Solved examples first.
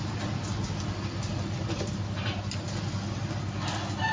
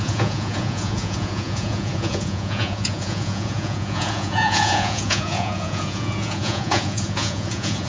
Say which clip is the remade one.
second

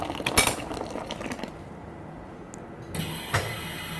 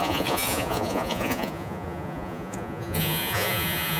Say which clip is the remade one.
second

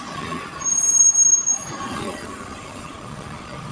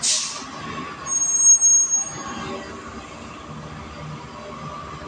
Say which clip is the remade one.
first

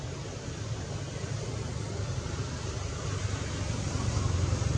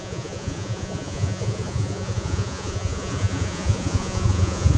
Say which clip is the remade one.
second